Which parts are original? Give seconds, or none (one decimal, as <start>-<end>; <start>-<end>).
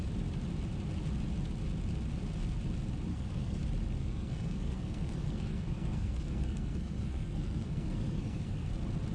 0.0-3.1; 3.6-4.0; 8.7-9.1